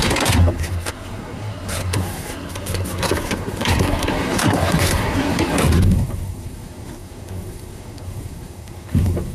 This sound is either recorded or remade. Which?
remade